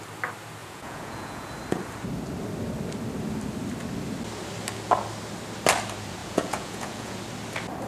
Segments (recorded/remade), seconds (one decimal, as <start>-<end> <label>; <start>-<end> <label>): 0.0-0.6 recorded; 0.6-1.5 remade; 1.5-6.2 recorded; 6.2-7.2 remade; 7.2-7.9 recorded

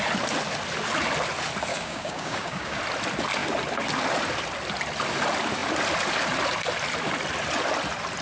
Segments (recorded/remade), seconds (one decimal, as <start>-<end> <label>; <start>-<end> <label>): 0.0-1.7 recorded; 1.7-2.8 remade; 2.8-8.2 recorded

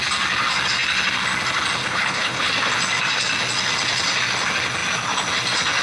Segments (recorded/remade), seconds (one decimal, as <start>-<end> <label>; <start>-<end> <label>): 0.0-1.8 recorded; 1.8-2.5 remade; 2.5-5.8 recorded

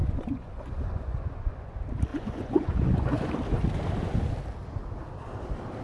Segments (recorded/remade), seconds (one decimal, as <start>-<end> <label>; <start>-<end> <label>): 0.0-1.7 remade; 1.7-2.1 recorded; 2.1-3.3 remade; 3.3-5.8 recorded

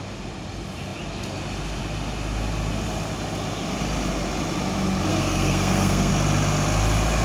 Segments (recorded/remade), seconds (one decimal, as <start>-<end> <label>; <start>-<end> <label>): 0.0-5.1 recorded; 5.1-6.1 remade; 6.1-7.2 recorded

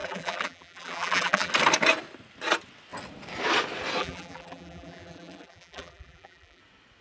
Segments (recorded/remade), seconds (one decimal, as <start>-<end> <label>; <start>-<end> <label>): 0.0-1.5 remade; 1.5-4.0 recorded; 4.0-6.6 remade; 6.6-7.0 recorded

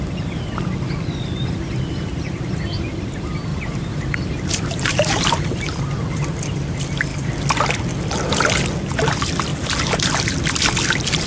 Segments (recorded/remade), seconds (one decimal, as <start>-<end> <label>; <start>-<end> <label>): 0.0-3.5 recorded; 3.5-5.3 remade; 5.3-9.5 recorded; 9.5-10.4 remade; 10.4-11.3 recorded